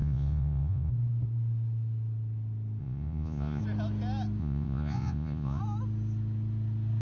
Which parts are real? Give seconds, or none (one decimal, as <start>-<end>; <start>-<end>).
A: 0.9-2.8; 3.6-4.4; 5.6-7.0